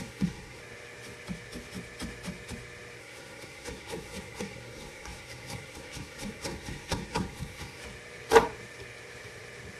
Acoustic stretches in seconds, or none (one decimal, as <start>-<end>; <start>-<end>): 0.6-3.0; 7.8-9.8